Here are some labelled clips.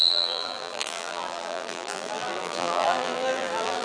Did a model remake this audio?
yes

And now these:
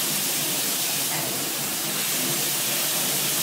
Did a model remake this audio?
no